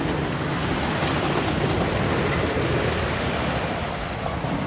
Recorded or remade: recorded